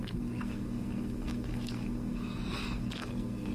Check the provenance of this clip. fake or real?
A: fake